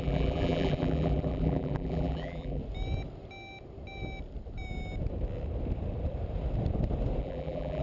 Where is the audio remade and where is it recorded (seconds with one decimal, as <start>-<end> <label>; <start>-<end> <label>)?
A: 0.0-2.6 remade; 2.6-7.2 recorded; 7.2-7.8 remade